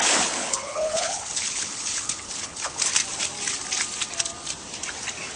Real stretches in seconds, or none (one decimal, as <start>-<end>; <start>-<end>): 2.8-5.4